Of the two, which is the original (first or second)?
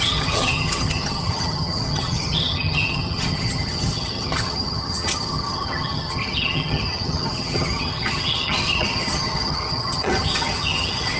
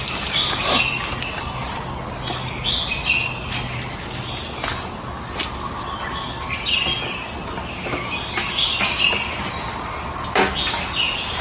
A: second